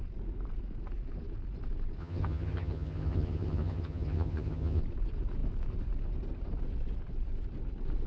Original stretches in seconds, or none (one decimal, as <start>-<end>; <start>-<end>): 0.0-2.0; 4.8-8.1